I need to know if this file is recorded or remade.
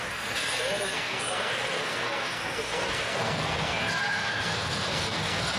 remade